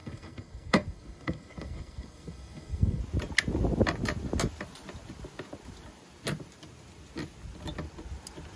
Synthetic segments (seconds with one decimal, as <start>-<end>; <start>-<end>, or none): 0.0-3.0